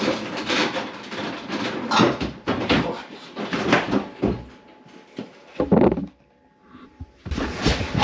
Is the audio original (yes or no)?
no